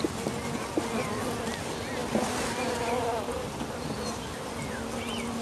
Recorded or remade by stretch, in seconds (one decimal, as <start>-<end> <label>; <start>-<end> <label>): 0.0-5.4 recorded